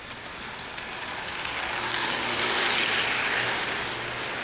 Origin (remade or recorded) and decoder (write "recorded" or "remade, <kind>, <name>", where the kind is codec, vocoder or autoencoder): recorded